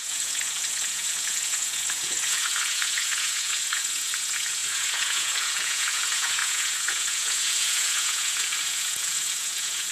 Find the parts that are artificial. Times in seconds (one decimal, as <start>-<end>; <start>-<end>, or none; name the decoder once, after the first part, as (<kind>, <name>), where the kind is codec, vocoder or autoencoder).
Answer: 0.0-9.9 (vocoder, Vocos)